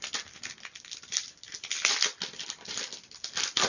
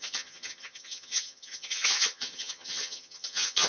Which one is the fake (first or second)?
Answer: second